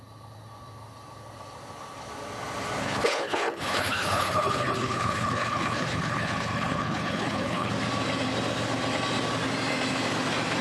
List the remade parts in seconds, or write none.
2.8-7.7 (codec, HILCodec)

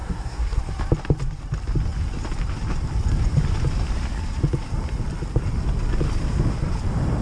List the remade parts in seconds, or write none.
0.0-0.6 (codec, SNAC)

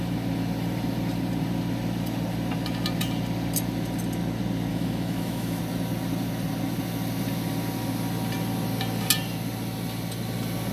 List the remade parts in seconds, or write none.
4.7-5.6 (autoencoder, DAC-VAE)

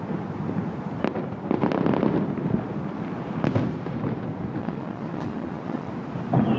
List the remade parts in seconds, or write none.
4.6-5.9 (vocoder, Vocos)